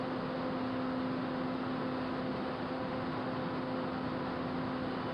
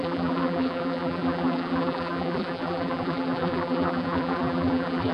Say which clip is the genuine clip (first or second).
first